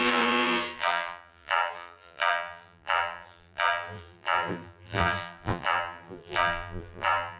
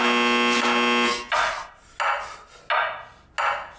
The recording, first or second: second